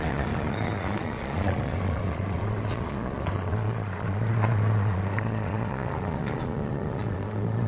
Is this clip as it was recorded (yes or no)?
no